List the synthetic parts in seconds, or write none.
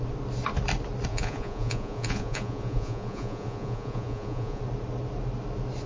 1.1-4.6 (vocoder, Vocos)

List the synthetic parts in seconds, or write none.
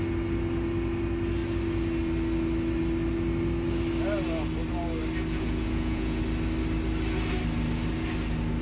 5.3-6.2 (vocoder, Vocos)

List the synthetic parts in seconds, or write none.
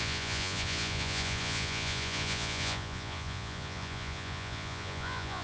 0.0-5.4 (vocoder, Vocos)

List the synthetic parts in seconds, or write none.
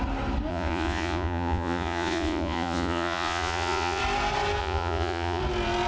0.5-4.0 (vocoder, Vocos); 4.6-5.4